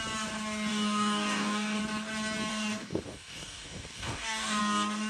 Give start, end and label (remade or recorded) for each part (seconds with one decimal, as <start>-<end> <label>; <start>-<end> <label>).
0.0-0.7 recorded; 0.7-1.8 remade; 1.8-2.5 recorded; 2.5-4.6 remade; 4.6-5.1 recorded